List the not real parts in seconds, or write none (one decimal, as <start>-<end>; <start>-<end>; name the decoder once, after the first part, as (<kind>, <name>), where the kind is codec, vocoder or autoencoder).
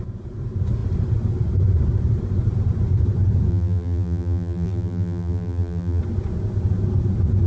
3.5-6.0 (vocoder, BigVGAN v2)